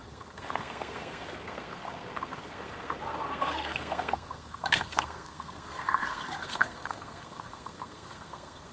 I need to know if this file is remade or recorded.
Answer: remade